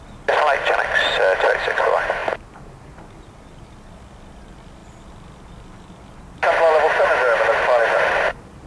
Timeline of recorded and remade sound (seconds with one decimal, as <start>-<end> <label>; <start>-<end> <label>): 0.0-2.2 remade; 2.2-3.9 recorded; 3.9-4.8 remade; 4.8-7.8 recorded; 7.8-8.7 remade